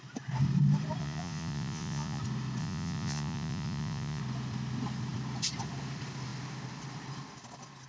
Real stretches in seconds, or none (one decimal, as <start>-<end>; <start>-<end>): 0.0-1.0; 2.2-2.6; 4.2-7.9